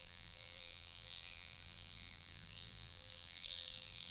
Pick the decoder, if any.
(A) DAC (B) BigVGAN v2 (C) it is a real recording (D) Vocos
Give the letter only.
B